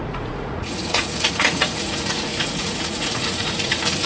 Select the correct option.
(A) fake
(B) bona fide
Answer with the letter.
A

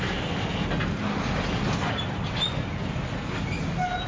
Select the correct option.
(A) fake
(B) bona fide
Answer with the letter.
B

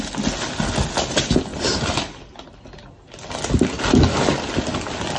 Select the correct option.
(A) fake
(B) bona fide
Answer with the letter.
B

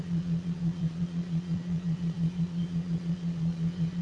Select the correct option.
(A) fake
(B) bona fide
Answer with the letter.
A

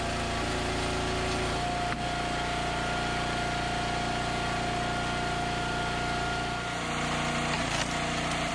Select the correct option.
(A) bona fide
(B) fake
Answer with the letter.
A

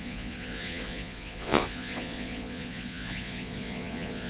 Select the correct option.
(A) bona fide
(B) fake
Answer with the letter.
B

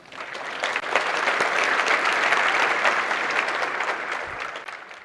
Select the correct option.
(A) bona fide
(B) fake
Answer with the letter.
A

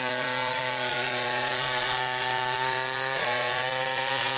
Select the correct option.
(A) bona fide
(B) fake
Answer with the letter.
B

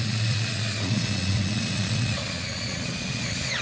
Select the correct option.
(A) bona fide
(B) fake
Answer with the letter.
B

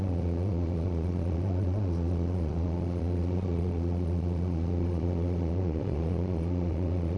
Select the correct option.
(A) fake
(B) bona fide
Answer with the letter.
A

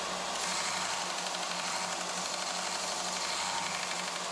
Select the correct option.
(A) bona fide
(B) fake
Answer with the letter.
A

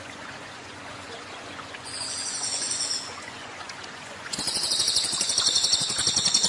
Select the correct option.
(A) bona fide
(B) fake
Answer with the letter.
B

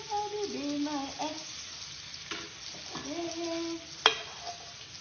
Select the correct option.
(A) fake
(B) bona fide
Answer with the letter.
B